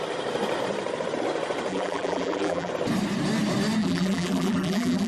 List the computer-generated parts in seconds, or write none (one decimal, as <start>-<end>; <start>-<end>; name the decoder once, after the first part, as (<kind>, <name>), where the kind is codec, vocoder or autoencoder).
1.7-2.7 (vocoder, BigVGAN v2); 3.8-5.1